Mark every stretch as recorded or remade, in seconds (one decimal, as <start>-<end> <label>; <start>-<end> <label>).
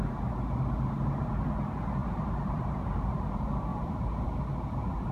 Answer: 0.0-2.0 recorded; 2.0-3.2 remade; 3.2-3.7 recorded; 3.7-4.4 remade; 4.4-5.1 recorded